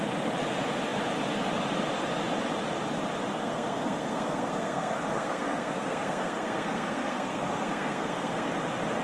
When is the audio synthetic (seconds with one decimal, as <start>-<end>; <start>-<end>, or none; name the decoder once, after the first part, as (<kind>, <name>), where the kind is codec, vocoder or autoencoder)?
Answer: 3.3-8.5 (codec, SNAC)